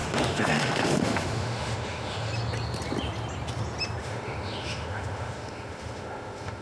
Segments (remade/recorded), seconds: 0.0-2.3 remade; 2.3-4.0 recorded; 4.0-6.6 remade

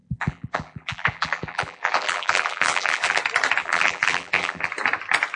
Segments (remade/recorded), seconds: 0.0-3.2 remade; 3.2-3.6 recorded; 3.6-4.7 remade; 4.7-5.4 recorded